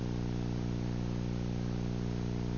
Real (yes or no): yes